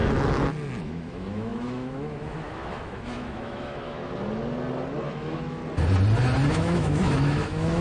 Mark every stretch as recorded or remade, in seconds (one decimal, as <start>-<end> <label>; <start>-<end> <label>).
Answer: 0.0-0.8 recorded; 0.8-4.0 remade; 4.0-5.1 recorded; 5.1-5.6 remade; 5.6-6.5 recorded; 6.5-7.8 remade